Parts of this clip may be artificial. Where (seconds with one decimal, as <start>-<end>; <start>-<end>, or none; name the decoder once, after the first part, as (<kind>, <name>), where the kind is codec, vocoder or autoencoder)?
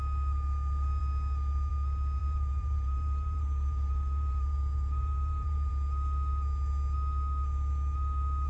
2.2-5.7 (vocoder, BigVGAN v2)